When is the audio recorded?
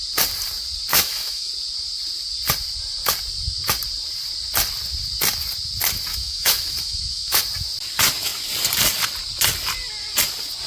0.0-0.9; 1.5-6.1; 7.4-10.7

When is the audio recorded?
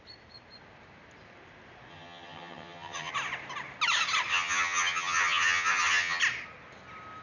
0.0-1.9; 3.1-4.3; 6.2-7.2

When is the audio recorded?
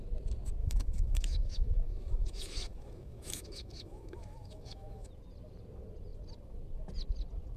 0.0-0.6; 5.1-7.6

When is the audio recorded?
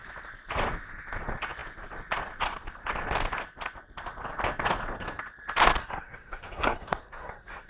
0.0-5.8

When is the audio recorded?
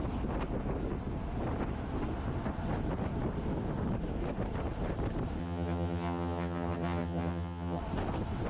0.0-5.4; 7.8-8.5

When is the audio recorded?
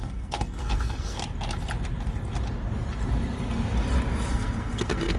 1.2-4.3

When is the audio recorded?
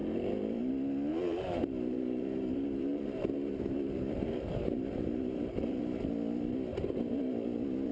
0.7-1.1; 5.8-6.7; 7.2-7.9